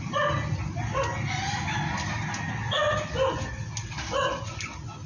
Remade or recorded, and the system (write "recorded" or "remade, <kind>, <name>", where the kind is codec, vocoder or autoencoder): recorded